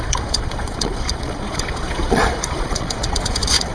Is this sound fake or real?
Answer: fake